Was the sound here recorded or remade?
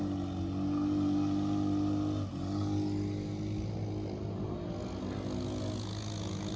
recorded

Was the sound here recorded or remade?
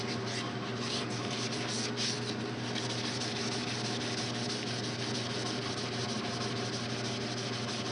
recorded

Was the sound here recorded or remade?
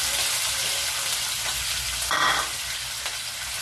recorded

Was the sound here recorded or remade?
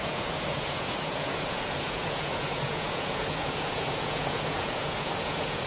remade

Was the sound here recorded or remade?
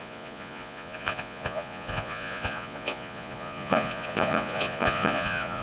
remade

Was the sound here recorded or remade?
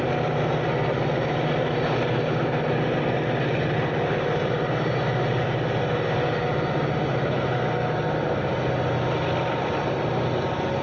recorded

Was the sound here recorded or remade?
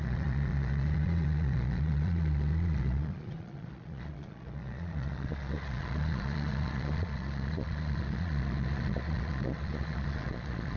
remade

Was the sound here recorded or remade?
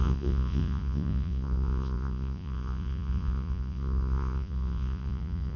remade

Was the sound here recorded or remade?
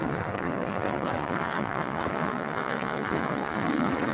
remade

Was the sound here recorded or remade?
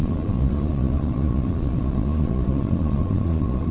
remade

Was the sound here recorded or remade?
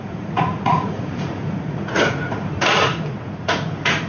remade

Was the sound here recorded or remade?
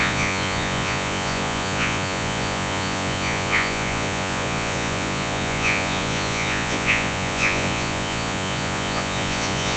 remade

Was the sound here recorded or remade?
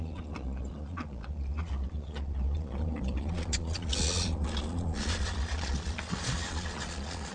remade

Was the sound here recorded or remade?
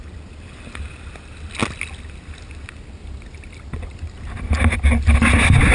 recorded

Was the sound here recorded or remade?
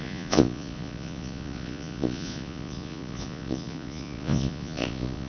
remade